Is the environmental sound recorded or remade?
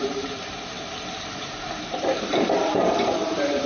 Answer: remade